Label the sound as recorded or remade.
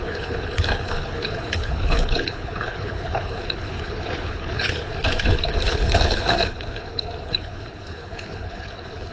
remade